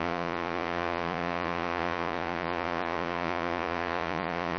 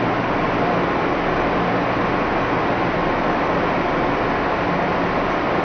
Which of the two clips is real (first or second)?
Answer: second